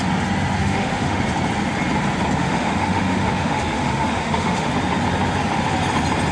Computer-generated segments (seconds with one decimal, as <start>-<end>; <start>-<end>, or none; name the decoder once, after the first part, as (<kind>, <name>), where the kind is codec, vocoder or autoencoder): 0.6-1.2 (autoencoder, DAC-VAE); 2.4-4.7